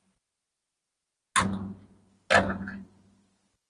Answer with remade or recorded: recorded